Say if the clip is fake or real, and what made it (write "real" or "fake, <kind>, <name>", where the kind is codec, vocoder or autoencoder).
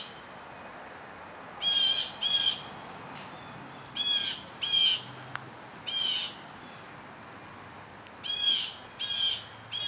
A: real